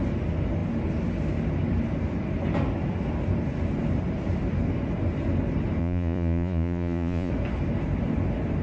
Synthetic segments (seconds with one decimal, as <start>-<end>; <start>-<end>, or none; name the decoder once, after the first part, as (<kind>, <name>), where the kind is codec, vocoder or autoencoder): 5.8-7.3 (vocoder, Vocos)

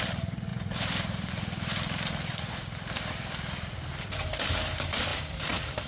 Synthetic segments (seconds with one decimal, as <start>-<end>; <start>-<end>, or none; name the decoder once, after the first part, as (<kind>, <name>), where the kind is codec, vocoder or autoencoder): 0.5-3.9 (vocoder, BigVGAN v2); 5.1-5.9

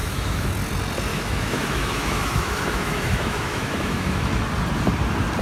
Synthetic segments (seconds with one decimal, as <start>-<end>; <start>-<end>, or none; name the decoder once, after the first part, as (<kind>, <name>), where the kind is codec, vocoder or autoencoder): 0.0-0.5 (autoencoder, DAC-VAE); 1.1-4.3

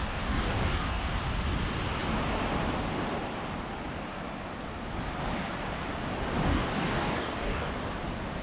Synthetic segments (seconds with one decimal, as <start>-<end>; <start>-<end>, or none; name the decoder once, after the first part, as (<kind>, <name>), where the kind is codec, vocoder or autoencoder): 0.0-1.0 (codec, DAC); 6.5-7.7

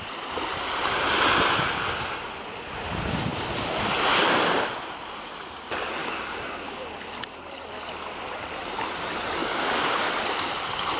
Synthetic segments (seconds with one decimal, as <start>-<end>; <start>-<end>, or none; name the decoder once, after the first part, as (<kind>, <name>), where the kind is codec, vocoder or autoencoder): 6.0-6.9 (codec, DAC); 9.4-10.1

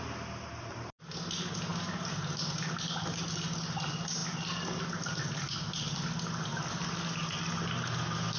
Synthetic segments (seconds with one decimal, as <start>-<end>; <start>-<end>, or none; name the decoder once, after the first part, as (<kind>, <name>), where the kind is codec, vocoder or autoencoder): none

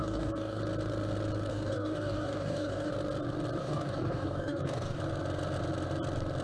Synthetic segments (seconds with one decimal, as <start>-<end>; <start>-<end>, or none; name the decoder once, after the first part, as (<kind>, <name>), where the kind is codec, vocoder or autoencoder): 0.0-0.6 (codec, DAC); 1.5-2.9; 3.6-5.0